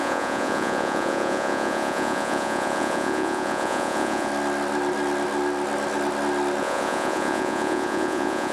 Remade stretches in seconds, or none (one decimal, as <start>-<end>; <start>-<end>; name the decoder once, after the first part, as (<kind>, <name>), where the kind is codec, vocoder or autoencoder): 0.0-4.3 (vocoder, Vocos); 6.6-8.5